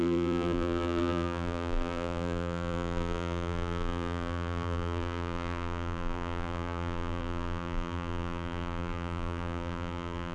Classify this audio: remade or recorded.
remade